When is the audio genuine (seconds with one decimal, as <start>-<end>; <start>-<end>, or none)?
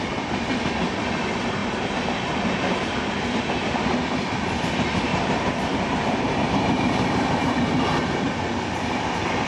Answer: 0.0-1.6; 3.1-5.1; 8.3-9.5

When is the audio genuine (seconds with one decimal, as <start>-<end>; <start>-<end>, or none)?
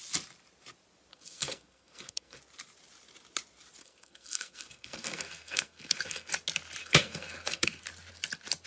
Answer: 0.0-1.1; 2.4-3.8; 6.3-6.8; 7.8-8.7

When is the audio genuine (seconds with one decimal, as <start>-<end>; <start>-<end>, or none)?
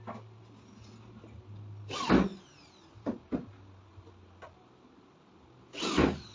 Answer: 0.0-6.3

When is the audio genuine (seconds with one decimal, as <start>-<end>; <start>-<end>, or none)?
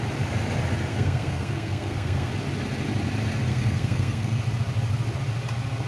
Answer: 0.0-0.9; 2.3-3.5; 4.4-5.9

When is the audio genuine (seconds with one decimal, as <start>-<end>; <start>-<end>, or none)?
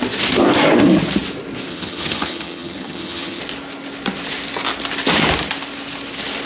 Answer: 0.0-1.7; 3.4-6.5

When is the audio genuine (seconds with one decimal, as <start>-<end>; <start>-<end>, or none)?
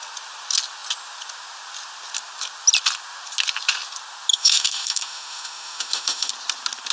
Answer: 0.0-4.3; 6.3-6.9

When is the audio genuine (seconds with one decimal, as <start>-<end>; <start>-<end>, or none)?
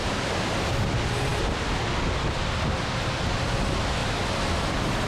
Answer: 0.7-4.0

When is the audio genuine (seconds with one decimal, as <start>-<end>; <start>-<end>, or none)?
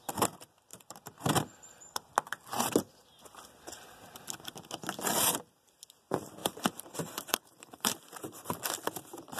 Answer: 0.0-0.7; 2.1-6.4; 8.0-9.4